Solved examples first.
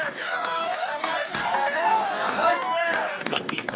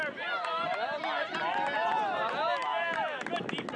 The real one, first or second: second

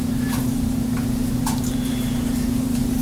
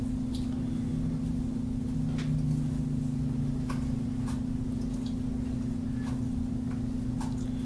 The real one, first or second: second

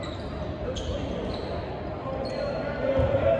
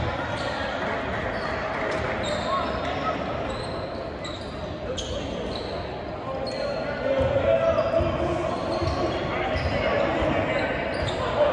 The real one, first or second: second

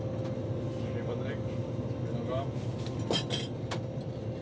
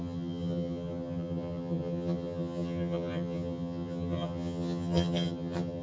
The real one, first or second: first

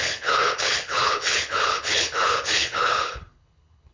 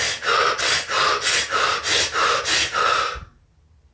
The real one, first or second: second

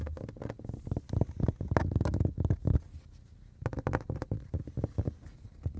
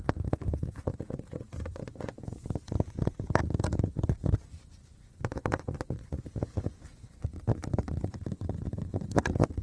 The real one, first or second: first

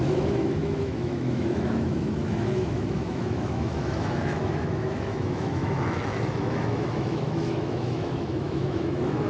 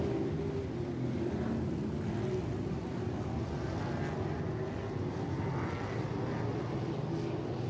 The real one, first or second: second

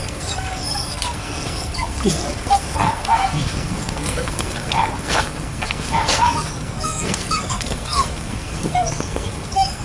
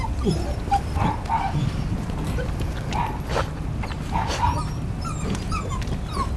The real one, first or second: second